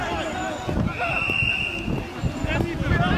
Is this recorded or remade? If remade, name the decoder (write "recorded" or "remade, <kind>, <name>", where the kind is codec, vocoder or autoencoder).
recorded